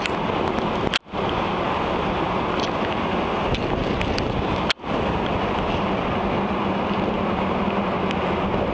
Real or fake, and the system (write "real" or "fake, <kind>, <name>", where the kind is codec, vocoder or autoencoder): real